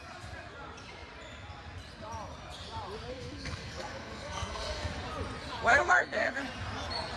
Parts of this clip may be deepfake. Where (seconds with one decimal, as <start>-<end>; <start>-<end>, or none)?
3.1-4.9; 5.7-6.4